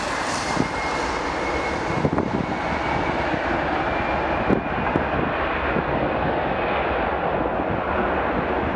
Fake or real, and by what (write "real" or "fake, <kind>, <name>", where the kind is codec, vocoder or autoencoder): real